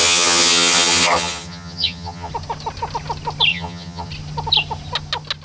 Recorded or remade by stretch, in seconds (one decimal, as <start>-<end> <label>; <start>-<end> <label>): 0.0-2.3 remade; 2.3-3.5 recorded; 3.5-4.1 remade; 4.1-5.4 recorded